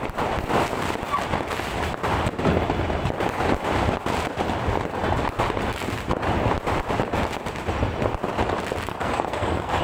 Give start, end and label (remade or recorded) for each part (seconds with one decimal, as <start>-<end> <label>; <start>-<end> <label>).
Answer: 0.0-8.9 recorded; 8.9-9.8 remade